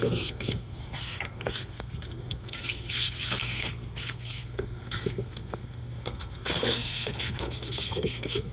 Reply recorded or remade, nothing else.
remade